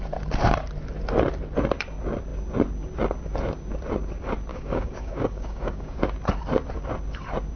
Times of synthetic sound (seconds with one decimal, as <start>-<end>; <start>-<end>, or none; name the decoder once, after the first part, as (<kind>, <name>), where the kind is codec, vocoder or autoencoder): 4.5-6.0 (codec, DAC)